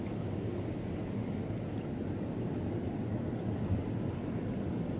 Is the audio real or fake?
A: real